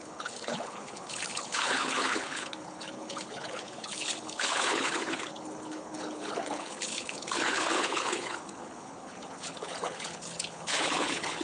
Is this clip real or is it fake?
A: fake